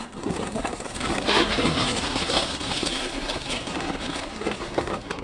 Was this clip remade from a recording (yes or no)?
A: yes